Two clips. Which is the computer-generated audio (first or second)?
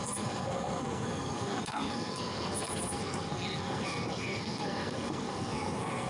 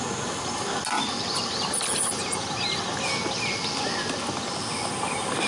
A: first